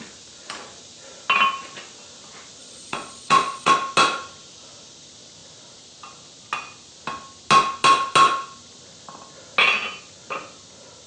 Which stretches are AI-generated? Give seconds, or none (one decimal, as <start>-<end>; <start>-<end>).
2.6-3.7